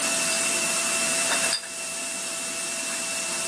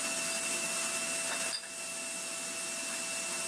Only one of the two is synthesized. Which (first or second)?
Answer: first